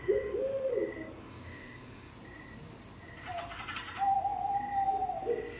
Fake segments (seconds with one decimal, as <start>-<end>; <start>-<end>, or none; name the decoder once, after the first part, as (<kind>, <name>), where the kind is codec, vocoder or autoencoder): 0.0-0.7 (autoencoder, DAC-VAE); 1.2-2.1